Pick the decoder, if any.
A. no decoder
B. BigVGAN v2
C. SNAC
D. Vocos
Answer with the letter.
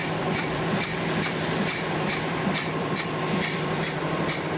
B